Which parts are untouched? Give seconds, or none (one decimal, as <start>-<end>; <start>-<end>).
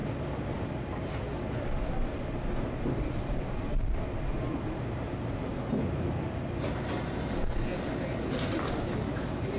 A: 0.0-9.6